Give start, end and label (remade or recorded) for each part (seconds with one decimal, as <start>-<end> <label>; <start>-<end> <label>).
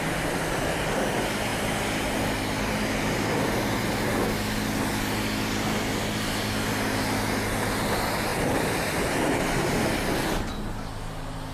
0.0-8.3 recorded; 8.3-10.0 remade; 10.0-11.5 recorded